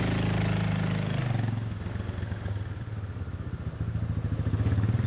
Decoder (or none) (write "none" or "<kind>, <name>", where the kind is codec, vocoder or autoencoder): none